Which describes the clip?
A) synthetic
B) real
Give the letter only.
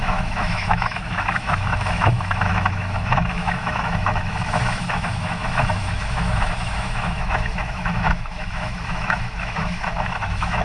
A